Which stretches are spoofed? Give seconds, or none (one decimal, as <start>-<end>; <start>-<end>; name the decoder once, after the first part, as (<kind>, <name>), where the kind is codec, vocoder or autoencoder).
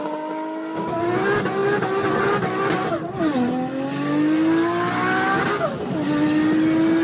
none